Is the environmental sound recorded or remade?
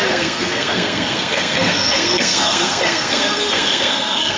remade